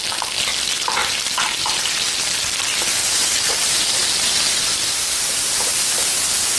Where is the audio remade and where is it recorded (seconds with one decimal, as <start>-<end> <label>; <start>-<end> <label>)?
0.0-3.0 recorded; 3.0-3.5 remade; 3.5-6.6 recorded